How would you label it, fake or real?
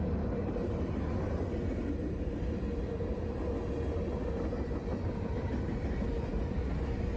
real